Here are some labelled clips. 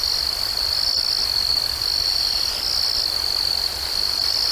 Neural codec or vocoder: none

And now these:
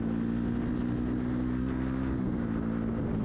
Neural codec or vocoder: none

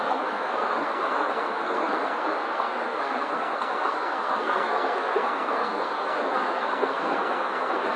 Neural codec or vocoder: codec, SNAC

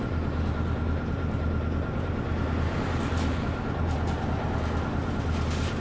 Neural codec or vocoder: none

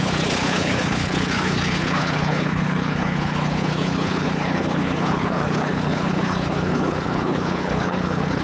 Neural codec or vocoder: codec, HILCodec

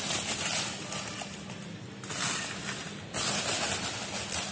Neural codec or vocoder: none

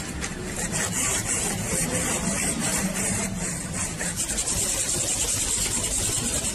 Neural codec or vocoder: none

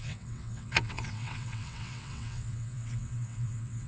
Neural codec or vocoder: vocoder, WaveNeXt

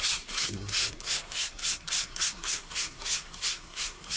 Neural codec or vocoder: codec, SNAC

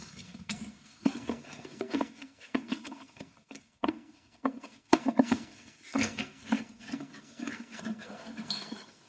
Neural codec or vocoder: codec, SNAC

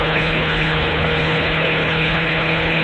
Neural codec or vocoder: codec, HILCodec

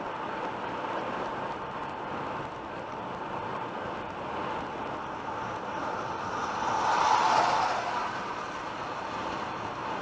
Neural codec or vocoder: none